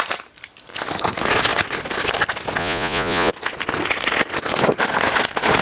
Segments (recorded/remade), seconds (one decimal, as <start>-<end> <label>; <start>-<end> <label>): 0.0-2.6 recorded; 2.6-3.3 remade; 3.3-5.6 recorded